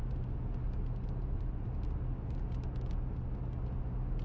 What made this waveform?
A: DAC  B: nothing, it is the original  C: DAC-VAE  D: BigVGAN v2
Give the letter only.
B